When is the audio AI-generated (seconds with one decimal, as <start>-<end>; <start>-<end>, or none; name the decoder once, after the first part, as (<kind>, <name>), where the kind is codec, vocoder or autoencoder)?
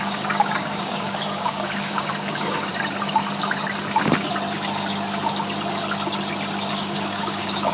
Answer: 0.0-2.7 (codec, DAC); 6.7-7.7